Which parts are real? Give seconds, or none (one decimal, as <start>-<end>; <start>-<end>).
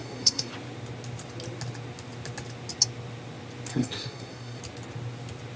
0.5-3.7; 4.6-5.6